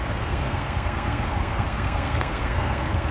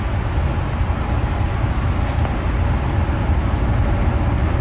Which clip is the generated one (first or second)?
first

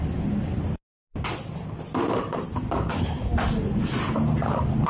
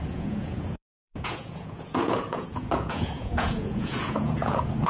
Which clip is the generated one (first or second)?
second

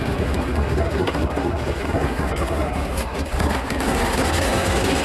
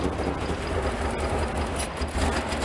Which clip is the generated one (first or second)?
first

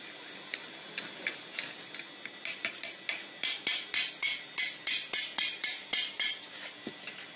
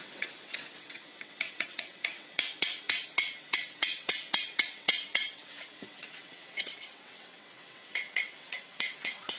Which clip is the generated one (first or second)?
second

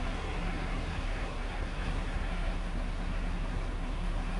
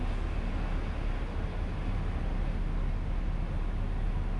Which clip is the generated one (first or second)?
first